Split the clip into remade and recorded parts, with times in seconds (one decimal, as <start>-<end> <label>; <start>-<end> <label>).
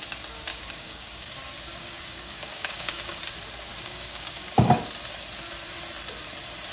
0.0-0.5 recorded; 0.5-1.3 remade; 1.3-1.8 recorded; 1.8-3.2 remade; 3.2-3.7 recorded; 3.7-4.7 remade; 4.7-6.7 recorded